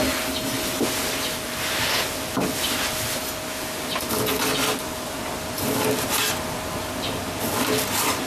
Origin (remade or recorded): recorded